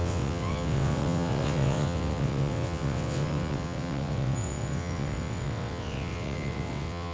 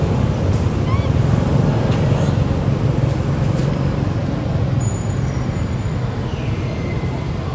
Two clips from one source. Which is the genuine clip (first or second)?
second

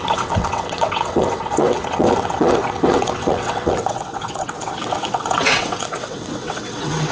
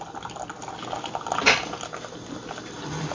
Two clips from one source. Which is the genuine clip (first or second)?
second